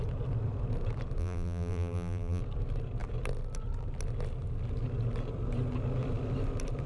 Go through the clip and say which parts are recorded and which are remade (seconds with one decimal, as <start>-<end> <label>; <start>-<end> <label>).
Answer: 0.0-1.2 recorded; 1.2-2.4 remade; 2.4-6.9 recorded